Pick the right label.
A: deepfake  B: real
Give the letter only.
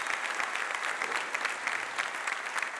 B